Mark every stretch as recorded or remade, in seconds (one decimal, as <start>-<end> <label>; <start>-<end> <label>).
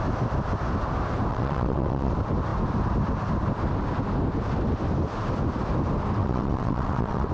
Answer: 0.0-1.3 recorded; 1.3-2.1 remade; 2.1-6.2 recorded; 6.2-7.3 remade